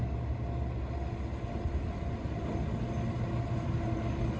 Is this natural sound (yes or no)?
yes